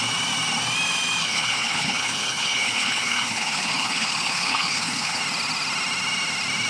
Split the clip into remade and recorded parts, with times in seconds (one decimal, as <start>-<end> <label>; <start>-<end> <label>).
0.0-1.2 recorded; 1.2-5.2 remade; 5.2-6.7 recorded